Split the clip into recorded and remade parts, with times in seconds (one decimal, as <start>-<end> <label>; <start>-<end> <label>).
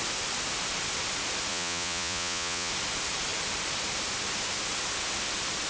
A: 0.0-1.5 recorded; 1.5-2.7 remade; 2.7-5.7 recorded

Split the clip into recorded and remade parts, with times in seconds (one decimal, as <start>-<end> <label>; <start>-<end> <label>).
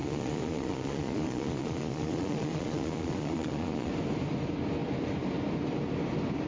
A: 0.0-3.9 remade; 3.9-6.5 recorded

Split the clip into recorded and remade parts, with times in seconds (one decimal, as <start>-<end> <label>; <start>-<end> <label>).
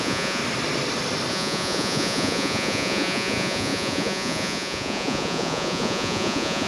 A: 0.0-0.4 remade; 0.4-1.3 recorded; 1.3-6.7 remade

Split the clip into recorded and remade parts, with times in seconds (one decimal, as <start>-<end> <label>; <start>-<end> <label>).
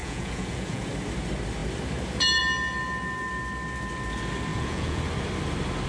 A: 0.0-0.8 remade; 0.8-4.5 recorded; 4.5-5.0 remade; 5.0-5.9 recorded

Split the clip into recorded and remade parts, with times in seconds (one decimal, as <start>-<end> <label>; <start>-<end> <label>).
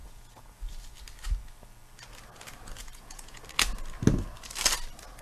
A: 0.0-0.6 remade; 0.6-2.8 recorded; 2.8-3.4 remade; 3.4-5.2 recorded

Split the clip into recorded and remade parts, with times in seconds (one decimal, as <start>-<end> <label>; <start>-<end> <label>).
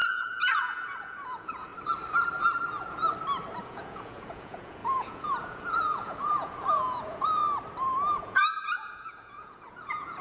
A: 0.0-1.7 remade; 1.7-3.6 recorded; 3.6-7.4 remade; 7.4-8.1 recorded; 8.1-10.2 remade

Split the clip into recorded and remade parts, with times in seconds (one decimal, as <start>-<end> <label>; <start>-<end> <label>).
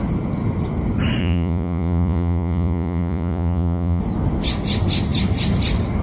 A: 0.0-1.2 recorded; 1.2-4.0 remade; 4.0-6.0 recorded